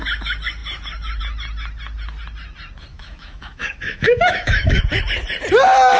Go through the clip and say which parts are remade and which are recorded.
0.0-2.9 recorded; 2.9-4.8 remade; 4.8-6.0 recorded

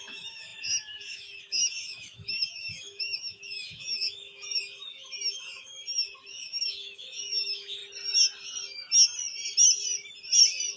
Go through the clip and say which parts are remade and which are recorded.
0.0-5.8 remade; 5.8-6.3 recorded; 6.3-7.8 remade; 7.8-10.8 recorded

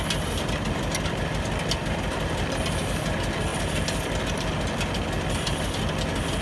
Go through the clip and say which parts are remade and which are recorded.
0.0-6.4 recorded

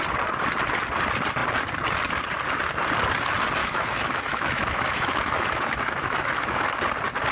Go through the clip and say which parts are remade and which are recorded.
0.0-3.6 recorded; 3.6-6.8 remade; 6.8-7.3 recorded